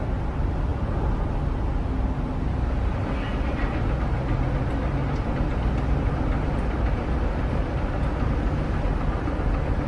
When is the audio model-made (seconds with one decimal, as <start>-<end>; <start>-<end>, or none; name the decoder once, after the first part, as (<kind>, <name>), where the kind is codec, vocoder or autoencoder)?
none